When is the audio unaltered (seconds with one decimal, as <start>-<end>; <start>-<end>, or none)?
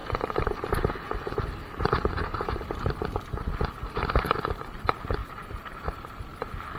3.0-5.2; 6.1-6.8